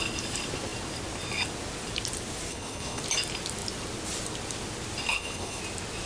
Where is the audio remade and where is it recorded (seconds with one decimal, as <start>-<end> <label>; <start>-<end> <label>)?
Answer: 0.0-2.5 recorded; 2.5-3.0 remade; 3.0-5.1 recorded; 5.1-5.6 remade; 5.6-6.1 recorded